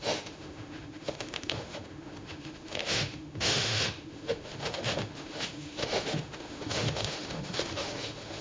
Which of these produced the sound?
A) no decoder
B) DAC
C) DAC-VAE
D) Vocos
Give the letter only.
C